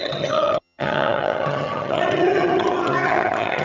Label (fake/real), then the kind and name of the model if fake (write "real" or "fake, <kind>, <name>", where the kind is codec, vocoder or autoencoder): fake, vocoder, HiFi-GAN